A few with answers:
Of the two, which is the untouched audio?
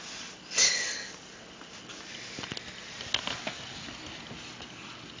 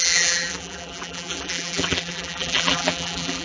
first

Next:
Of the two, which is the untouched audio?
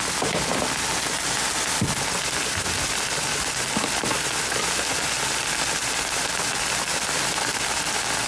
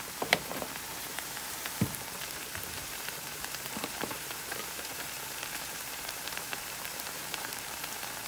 first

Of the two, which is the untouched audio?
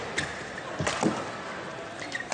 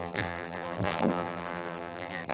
first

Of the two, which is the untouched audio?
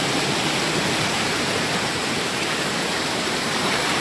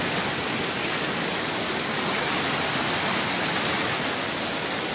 second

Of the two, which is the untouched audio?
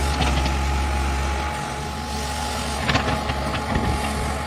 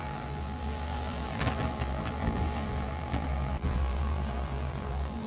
first